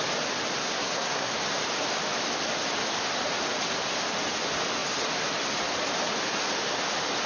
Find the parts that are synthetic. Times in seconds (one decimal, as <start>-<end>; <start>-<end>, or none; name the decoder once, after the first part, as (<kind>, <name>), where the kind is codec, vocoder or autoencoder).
0.6-1.3 (codec, SNAC)